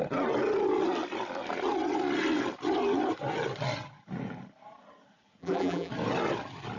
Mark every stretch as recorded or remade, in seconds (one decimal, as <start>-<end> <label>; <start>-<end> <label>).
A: 0.0-5.4 recorded; 5.4-5.9 remade; 5.9-6.8 recorded